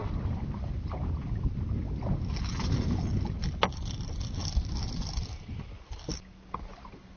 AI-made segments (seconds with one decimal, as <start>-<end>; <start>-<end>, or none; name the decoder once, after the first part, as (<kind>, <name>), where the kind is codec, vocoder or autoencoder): 0.0-1.6 (vocoder, BigVGAN v2); 3.7-6.6